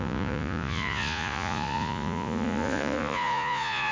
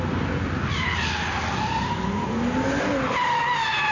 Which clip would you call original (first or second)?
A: second